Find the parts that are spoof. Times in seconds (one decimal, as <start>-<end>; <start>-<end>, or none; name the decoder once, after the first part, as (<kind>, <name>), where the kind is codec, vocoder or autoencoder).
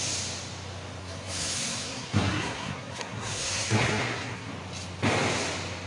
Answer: 1.0-4.5 (codec, SNAC)